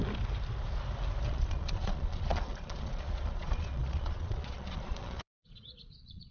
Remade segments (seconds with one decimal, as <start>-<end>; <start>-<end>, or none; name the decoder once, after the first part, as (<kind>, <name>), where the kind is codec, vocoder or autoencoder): 1.3-6.3 (vocoder, Vocos)